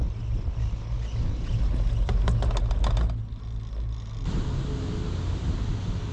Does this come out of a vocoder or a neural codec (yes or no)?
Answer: no